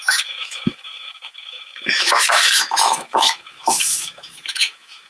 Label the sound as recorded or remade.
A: remade